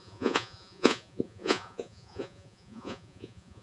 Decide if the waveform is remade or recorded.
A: remade